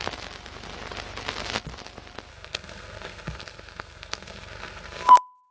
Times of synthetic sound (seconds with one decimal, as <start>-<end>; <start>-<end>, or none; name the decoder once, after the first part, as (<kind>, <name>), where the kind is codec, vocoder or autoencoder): 2.3-5.5 (codec, SNAC)